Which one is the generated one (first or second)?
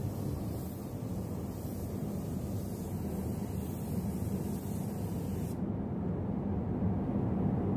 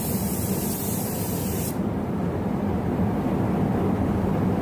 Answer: second